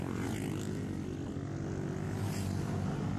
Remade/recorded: recorded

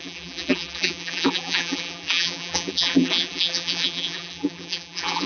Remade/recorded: remade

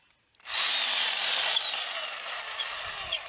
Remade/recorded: recorded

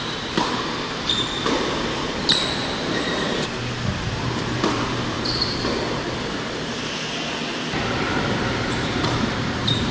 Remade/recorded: remade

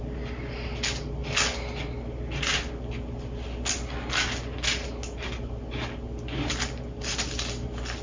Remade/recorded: recorded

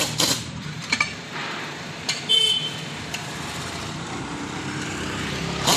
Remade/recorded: remade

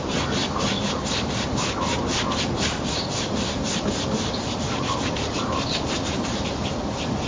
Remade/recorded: remade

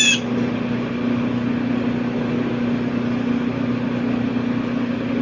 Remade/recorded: recorded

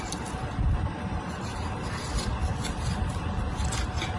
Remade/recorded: remade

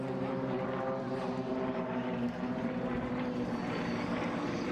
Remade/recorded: remade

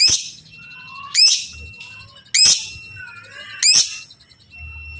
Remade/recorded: recorded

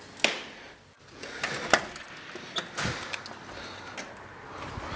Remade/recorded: recorded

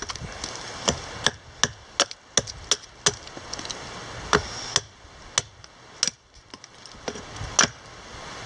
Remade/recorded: recorded